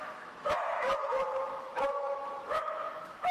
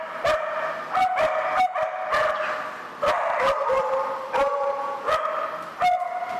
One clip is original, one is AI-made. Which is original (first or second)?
second